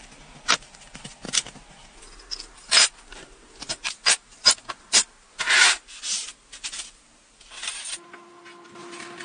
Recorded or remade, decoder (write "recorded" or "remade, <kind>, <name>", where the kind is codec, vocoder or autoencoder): recorded